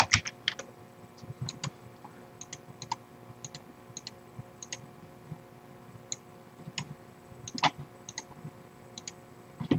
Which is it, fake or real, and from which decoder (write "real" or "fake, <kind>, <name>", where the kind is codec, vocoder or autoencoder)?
real